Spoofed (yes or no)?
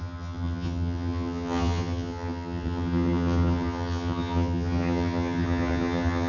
yes